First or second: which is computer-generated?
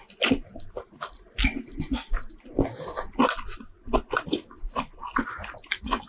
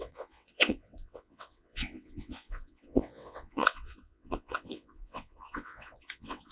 second